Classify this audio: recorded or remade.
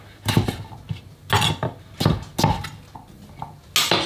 recorded